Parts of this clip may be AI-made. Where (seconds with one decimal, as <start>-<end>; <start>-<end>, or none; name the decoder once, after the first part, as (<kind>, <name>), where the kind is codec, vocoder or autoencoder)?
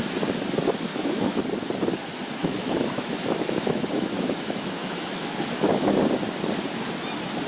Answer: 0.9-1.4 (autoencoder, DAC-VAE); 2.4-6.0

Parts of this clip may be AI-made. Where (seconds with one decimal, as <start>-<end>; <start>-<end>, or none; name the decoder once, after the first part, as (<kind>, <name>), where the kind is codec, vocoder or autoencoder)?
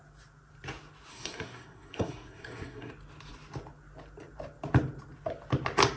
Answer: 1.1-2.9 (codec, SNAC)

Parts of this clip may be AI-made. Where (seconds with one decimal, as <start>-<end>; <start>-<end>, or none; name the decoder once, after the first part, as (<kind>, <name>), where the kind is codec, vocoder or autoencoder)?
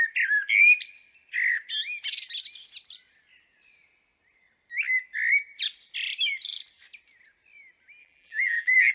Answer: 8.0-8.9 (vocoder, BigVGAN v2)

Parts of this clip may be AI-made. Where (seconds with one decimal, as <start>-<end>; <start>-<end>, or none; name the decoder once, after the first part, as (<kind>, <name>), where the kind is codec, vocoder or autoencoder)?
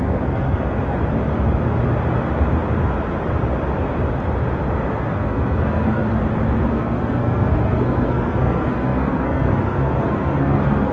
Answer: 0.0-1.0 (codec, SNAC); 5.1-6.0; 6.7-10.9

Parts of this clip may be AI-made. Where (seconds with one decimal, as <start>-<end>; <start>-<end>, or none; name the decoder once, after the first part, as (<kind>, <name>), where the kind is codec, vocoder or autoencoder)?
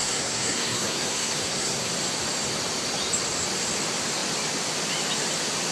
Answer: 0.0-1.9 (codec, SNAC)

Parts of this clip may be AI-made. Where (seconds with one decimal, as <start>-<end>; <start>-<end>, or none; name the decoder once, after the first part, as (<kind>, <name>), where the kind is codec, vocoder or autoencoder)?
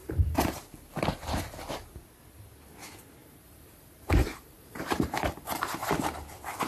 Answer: 0.0-0.6 (vocoder, BigVGAN v2); 3.2-5.9